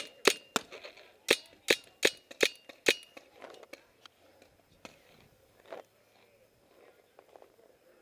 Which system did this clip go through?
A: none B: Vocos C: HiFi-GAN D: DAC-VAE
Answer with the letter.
A